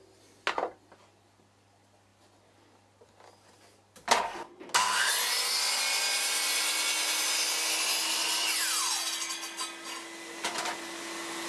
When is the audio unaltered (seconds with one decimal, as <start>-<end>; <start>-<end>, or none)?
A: 0.0-11.5